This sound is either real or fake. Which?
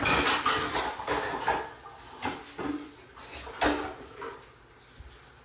real